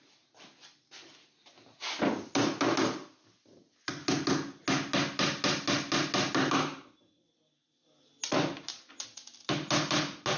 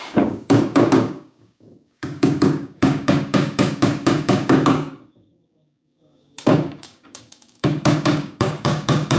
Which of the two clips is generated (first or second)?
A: second